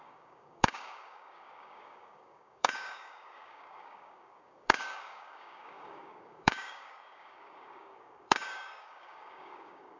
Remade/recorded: remade